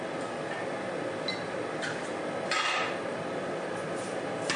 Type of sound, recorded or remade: recorded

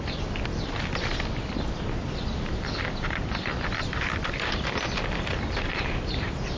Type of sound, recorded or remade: remade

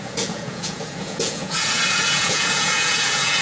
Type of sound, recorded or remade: remade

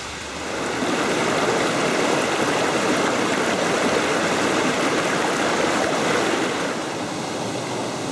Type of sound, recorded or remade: remade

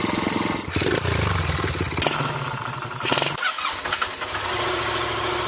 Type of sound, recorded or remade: recorded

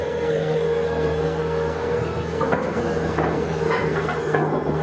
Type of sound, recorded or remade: remade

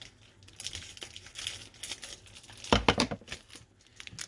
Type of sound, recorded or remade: recorded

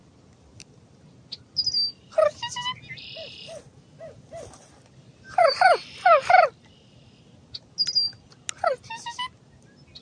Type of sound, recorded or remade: recorded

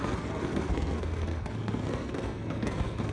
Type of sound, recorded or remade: remade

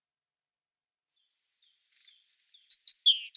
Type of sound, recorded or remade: recorded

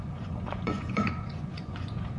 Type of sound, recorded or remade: remade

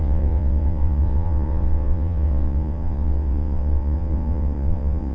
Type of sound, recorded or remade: remade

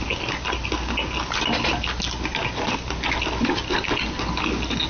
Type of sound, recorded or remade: recorded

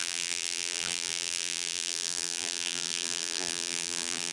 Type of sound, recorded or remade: remade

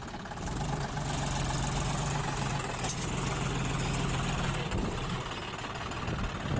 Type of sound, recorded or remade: recorded